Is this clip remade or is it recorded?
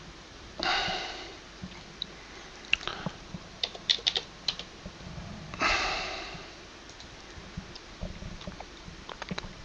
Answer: remade